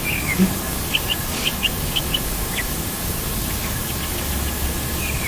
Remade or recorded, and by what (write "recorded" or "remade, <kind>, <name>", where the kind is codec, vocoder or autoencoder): remade, codec, DAC